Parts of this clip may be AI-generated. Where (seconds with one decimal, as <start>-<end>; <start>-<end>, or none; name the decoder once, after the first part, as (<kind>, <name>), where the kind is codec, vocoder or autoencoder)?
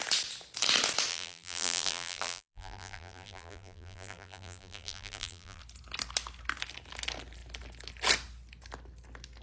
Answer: 1.1-5.6 (vocoder, BigVGAN v2)